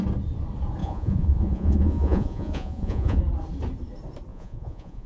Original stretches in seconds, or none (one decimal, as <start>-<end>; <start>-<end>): 0.0-0.8; 3.2-4.3